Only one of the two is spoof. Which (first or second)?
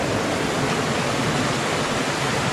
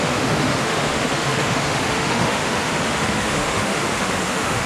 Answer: second